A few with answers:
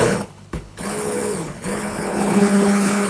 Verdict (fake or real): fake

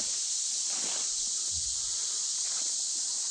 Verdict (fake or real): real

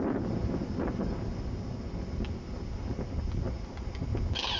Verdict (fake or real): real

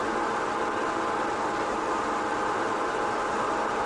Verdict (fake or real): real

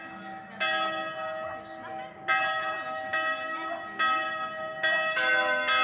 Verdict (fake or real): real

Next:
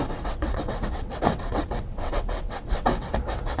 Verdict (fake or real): fake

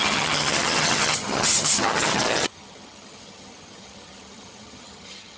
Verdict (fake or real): fake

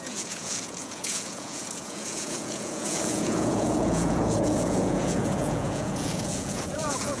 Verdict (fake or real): fake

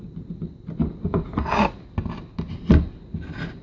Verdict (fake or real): real